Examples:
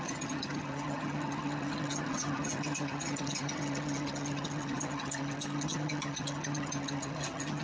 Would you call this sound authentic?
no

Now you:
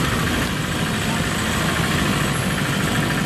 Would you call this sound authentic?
yes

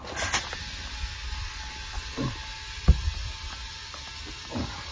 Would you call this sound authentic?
yes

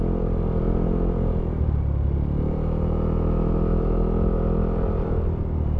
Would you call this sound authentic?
yes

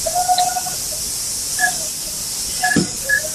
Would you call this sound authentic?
yes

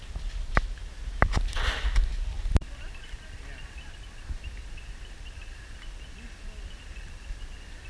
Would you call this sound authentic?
yes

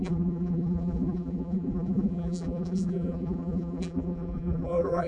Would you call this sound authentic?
no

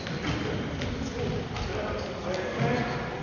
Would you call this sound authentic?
yes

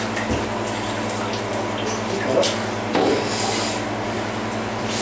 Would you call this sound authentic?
yes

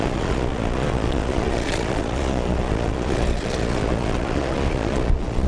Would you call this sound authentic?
no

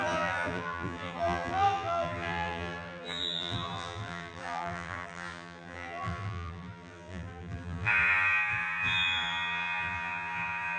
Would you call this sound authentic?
no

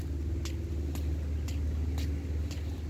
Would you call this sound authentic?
yes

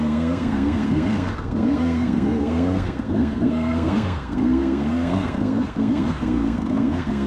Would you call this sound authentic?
no